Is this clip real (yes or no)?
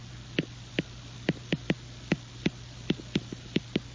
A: yes